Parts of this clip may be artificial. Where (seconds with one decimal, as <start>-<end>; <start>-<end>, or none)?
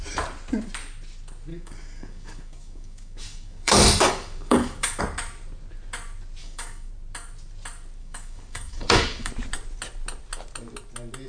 1.5-5.0; 6.4-6.9; 8.0-9.3